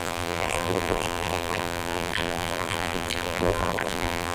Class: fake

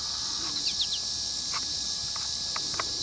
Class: fake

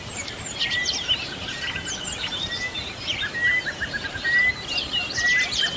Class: real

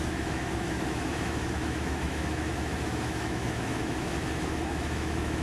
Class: fake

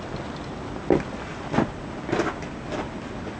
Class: real